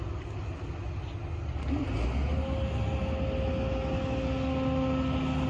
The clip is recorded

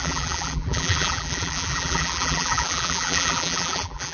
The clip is remade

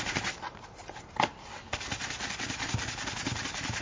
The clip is remade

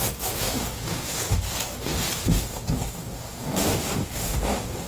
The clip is remade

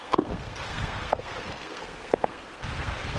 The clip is remade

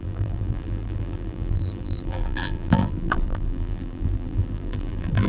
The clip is remade